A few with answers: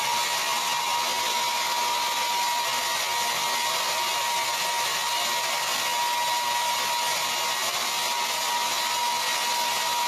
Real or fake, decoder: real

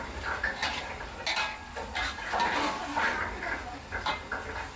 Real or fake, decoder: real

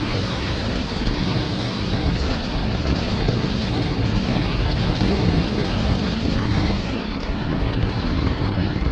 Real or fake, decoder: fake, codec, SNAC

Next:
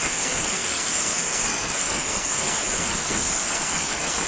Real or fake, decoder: fake, codec, SNAC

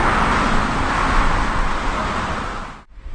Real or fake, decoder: real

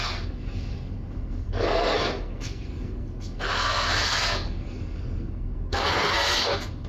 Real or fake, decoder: fake, codec, SNAC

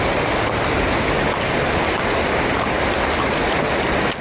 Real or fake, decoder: real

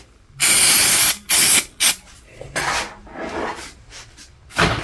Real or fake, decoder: real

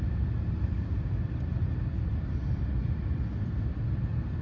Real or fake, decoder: real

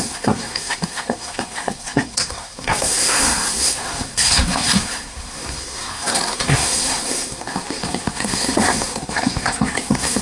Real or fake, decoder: fake, codec, SNAC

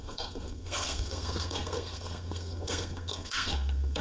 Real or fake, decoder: fake, codec, SNAC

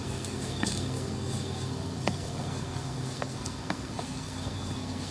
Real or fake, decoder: fake, codec, SNAC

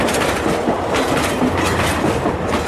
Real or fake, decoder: real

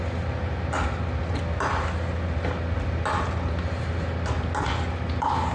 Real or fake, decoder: real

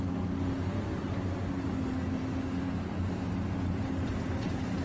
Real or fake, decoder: real